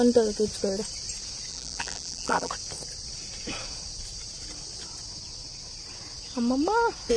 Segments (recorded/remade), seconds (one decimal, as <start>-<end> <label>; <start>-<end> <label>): 0.0-1.5 recorded; 1.5-2.5 remade; 2.5-7.2 recorded